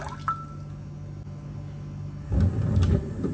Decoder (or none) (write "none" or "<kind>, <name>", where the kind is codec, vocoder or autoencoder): none